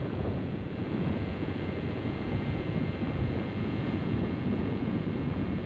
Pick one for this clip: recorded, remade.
remade